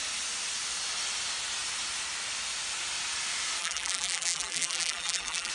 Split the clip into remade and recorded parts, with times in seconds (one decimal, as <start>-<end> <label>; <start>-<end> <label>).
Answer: 0.0-3.6 recorded; 3.6-5.5 remade